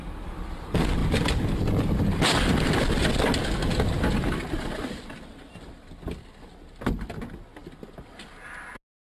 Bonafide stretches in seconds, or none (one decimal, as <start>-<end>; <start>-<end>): 0.0-9.0